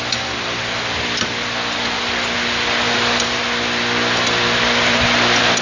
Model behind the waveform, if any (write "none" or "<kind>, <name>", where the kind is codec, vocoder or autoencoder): none